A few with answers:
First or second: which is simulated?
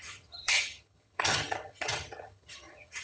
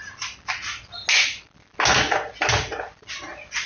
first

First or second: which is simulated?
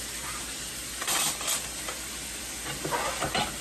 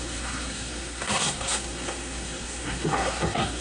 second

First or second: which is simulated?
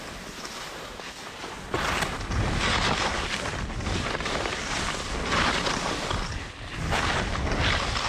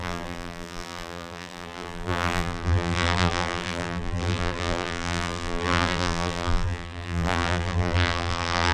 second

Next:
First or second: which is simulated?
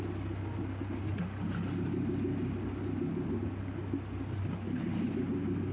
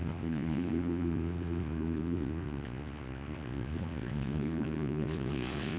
second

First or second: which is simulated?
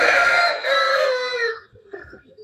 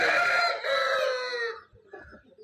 first